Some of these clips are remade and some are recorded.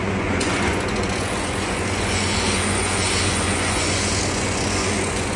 remade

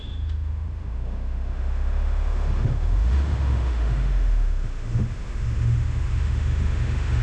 remade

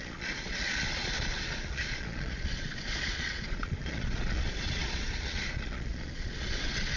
remade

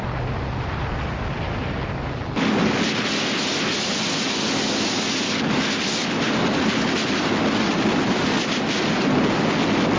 recorded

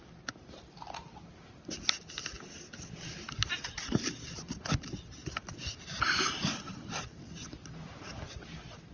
recorded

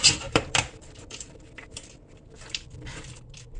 remade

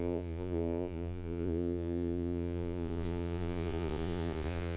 remade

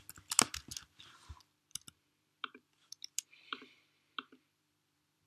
remade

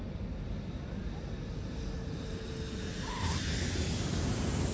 recorded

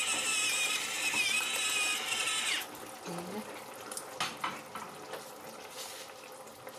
recorded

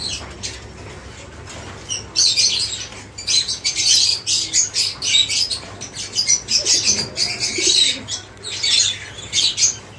recorded